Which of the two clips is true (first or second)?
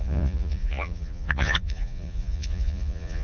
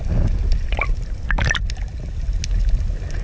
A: second